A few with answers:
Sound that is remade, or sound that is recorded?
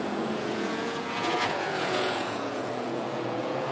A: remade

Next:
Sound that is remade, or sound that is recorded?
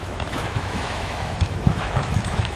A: remade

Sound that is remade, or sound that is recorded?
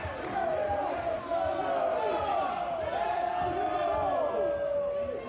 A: recorded